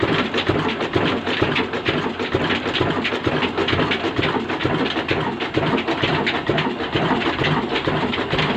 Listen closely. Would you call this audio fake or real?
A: fake